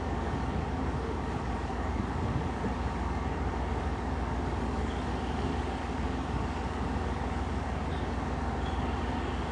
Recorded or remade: remade